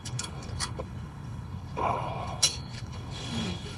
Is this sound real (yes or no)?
no